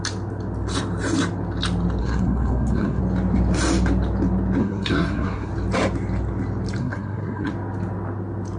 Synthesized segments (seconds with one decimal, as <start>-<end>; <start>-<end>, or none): 2.0-3.0; 4.6-5.5; 6.8-7.5